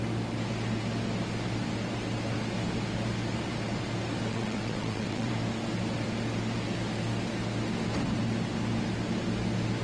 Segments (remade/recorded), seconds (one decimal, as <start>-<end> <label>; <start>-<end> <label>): 0.0-4.3 recorded; 4.3-5.3 remade; 5.3-9.8 recorded